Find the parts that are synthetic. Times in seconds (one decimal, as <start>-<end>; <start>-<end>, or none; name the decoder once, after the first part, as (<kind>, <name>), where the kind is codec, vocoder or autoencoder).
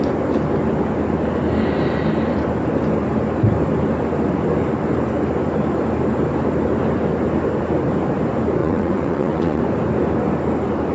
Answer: 8.6-9.6 (vocoder, WaveNeXt)